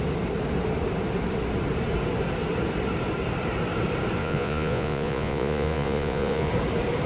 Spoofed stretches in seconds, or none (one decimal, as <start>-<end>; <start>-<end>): 4.2-6.5